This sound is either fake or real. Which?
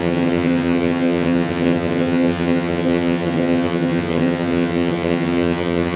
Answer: fake